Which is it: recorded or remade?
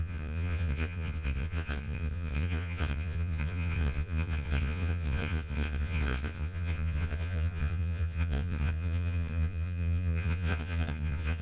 remade